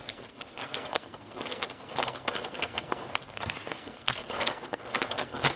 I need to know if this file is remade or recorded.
remade